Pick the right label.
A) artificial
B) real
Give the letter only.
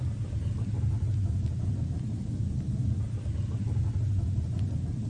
B